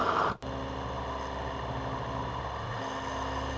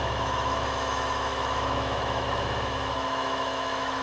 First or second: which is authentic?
first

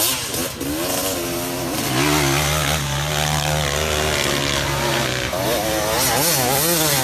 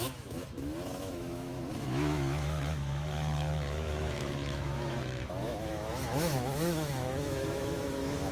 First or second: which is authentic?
first